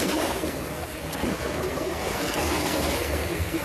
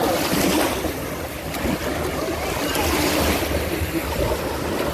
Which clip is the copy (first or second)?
first